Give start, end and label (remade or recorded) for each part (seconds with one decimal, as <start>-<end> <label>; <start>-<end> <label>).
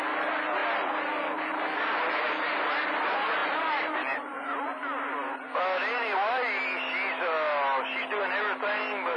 0.0-9.2 recorded